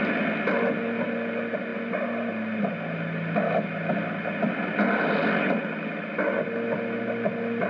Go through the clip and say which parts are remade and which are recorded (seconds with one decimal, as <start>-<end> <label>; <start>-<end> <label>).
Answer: 0.0-7.7 recorded